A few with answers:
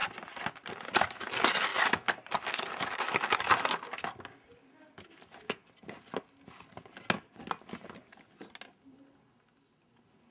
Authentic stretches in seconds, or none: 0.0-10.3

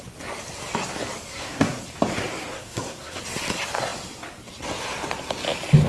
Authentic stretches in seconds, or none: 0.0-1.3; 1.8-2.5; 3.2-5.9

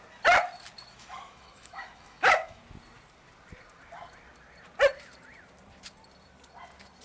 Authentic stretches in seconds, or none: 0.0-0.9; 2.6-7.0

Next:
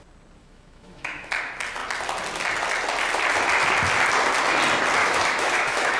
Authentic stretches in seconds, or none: 0.0-0.4; 1.3-5.0

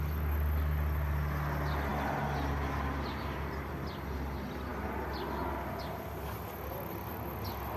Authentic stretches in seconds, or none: 0.0-7.8

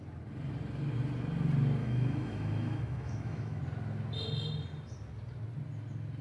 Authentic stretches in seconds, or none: 0.0-1.8; 3.6-6.2

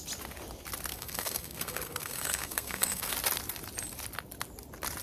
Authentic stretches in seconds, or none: 0.0-0.9; 3.1-5.0